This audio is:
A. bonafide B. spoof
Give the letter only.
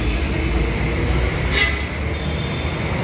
A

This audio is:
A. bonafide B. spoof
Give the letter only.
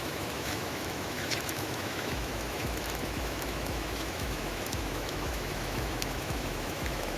B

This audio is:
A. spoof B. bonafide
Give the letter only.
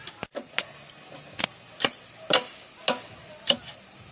B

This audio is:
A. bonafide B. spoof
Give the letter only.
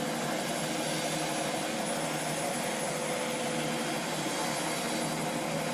A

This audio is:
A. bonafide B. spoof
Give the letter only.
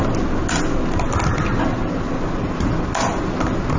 A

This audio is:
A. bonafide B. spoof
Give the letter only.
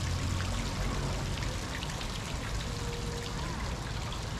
A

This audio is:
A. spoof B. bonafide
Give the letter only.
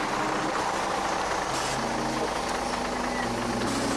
B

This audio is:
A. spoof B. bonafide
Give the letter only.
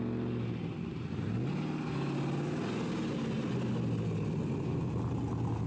B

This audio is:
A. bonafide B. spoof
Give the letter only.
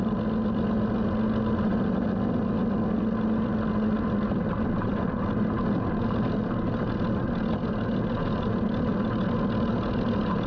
A